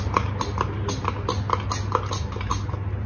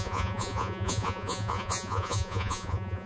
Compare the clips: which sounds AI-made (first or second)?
second